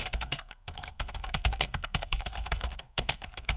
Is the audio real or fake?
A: fake